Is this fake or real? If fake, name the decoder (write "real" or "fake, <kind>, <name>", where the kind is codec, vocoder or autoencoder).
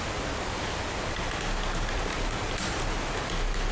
real